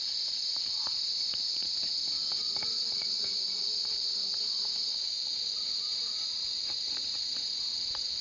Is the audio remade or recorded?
remade